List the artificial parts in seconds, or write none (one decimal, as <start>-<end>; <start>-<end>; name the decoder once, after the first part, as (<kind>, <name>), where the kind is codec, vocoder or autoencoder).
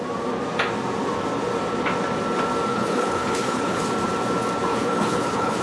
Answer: 2.7-3.8 (codec, HILCodec); 4.7-5.6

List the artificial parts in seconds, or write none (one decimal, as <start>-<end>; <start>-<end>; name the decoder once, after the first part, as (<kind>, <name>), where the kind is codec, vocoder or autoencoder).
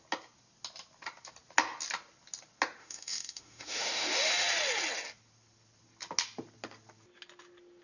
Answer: 2.8-4.3 (autoencoder, DAC-VAE)